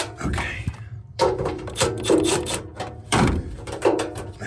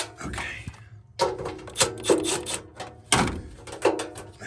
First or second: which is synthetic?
first